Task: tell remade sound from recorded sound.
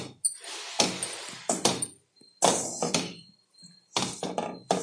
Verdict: recorded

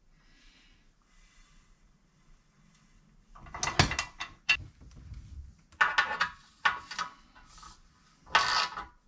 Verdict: recorded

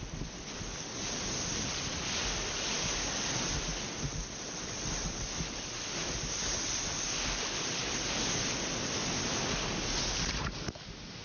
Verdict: recorded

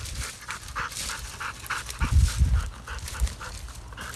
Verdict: recorded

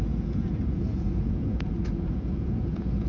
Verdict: remade